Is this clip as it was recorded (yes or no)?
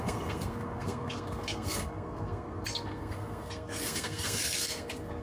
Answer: no